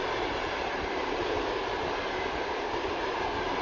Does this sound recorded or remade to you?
remade